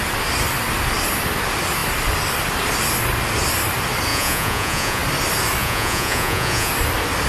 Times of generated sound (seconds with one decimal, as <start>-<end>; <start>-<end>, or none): 4.1-5.0; 5.6-6.7